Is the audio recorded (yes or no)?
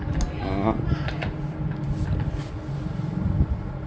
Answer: yes